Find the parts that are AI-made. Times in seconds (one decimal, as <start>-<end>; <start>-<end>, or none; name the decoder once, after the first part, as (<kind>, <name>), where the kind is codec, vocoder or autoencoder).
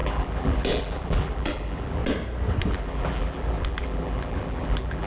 0.0-2.0 (vocoder, BigVGAN v2); 2.7-5.1